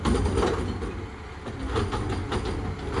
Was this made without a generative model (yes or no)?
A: yes